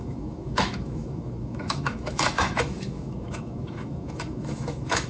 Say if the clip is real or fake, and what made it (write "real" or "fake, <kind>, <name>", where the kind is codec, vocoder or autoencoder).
fake, autoencoder, DAC-VAE